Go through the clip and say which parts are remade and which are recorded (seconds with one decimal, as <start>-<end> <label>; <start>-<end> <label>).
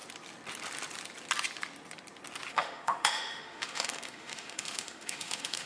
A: 0.0-2.5 recorded; 2.5-5.7 remade